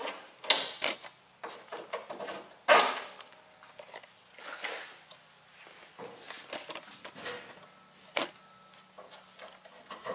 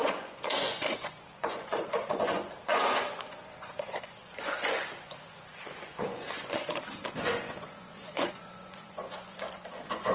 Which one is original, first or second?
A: first